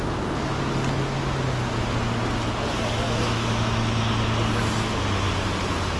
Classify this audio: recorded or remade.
recorded